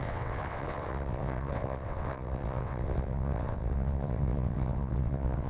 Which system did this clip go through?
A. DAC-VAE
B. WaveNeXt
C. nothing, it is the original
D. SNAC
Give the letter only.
B